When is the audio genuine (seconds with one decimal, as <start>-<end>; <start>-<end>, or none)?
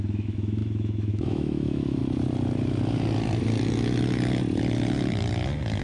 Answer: 2.0-5.8